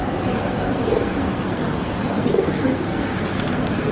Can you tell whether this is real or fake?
fake